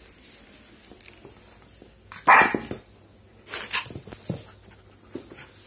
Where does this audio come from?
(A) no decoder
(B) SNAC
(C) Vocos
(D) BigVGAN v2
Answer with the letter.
A